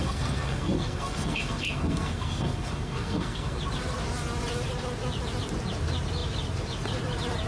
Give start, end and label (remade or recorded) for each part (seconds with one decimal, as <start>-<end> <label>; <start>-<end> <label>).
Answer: 0.0-3.6 remade; 3.6-7.5 recorded